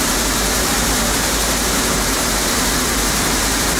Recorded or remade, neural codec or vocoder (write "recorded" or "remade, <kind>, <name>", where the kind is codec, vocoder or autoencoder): remade, vocoder, BigVGAN v2